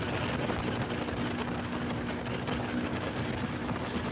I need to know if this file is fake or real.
real